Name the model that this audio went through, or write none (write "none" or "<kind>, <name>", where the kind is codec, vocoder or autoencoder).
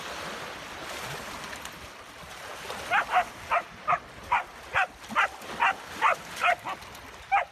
none